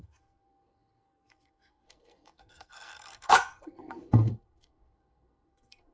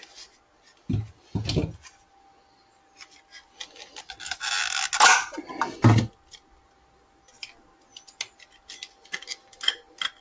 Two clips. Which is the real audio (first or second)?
second